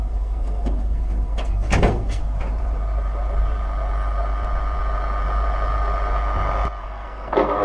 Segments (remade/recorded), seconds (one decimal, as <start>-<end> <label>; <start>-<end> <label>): 0.0-2.2 remade; 2.2-6.8 recorded; 6.8-7.6 remade